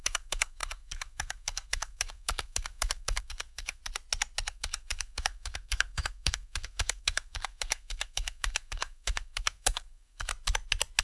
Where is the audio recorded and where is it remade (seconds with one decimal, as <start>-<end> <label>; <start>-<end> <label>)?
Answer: 0.0-3.8 remade; 3.8-4.5 recorded; 4.5-10.3 remade; 10.3-11.0 recorded